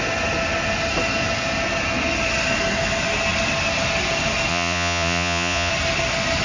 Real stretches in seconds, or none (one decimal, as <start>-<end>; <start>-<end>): 0.0-4.5; 5.7-6.4